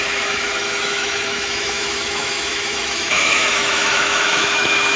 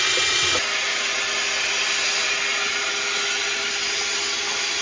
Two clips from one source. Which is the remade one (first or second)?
first